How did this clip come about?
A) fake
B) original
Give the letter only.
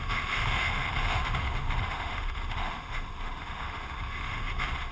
A